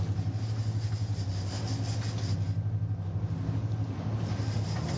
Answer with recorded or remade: recorded